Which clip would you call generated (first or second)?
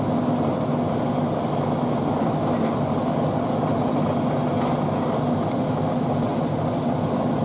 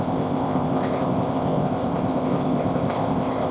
second